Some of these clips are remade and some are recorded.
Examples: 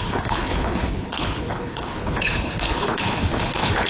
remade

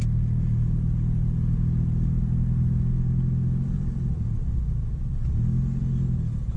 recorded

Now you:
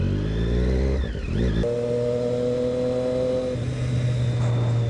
recorded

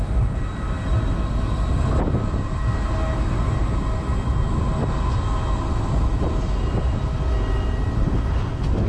recorded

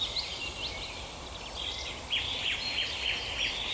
recorded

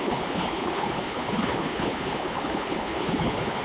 remade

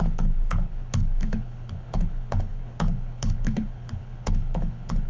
remade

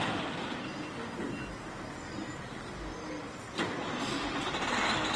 recorded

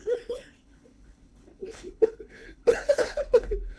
remade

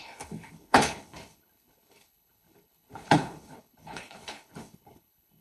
remade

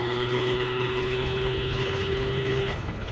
remade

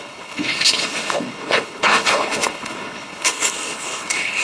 remade